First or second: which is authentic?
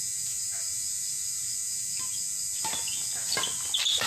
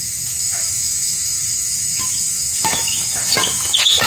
first